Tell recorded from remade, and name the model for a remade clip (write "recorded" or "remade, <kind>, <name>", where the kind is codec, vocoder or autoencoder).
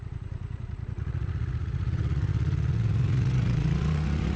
remade, vocoder, Vocos